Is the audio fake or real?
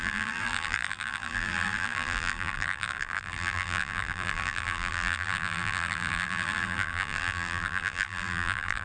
fake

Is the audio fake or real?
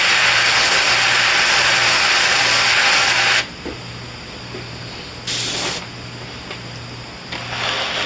real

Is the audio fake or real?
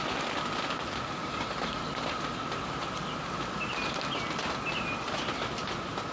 real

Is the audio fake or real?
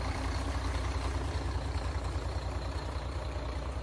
fake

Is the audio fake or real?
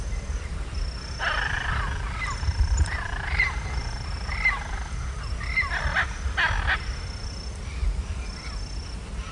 fake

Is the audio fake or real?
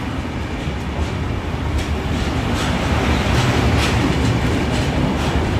fake